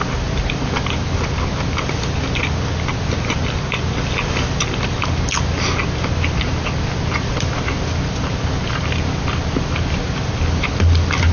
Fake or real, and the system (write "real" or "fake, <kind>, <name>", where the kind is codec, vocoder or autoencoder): real